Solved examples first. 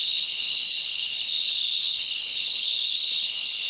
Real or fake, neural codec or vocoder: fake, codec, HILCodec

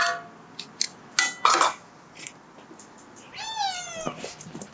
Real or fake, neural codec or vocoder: real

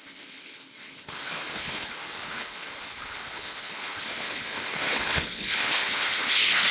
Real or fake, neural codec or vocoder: fake, codec, HILCodec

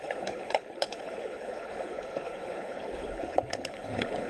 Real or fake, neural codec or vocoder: fake, codec, HILCodec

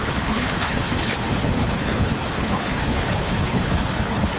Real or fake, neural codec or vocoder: fake, codec, HILCodec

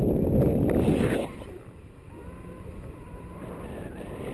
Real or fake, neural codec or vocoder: real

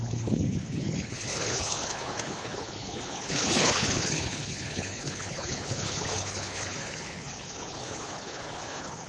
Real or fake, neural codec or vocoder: fake, codec, HILCodec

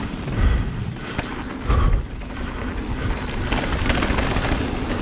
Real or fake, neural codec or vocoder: real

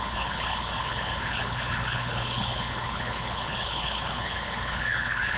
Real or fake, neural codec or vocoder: fake, codec, HILCodec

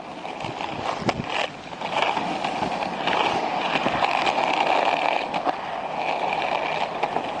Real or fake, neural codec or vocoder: real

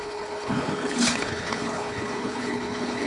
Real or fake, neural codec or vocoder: fake, codec, HILCodec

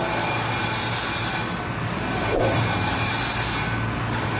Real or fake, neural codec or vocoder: real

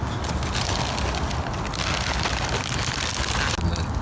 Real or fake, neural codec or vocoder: real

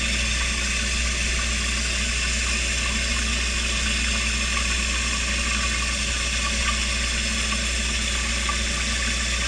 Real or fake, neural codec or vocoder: real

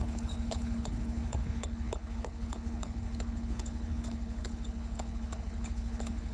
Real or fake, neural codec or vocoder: fake, codec, HILCodec